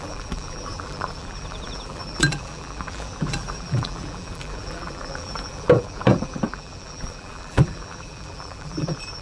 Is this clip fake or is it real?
fake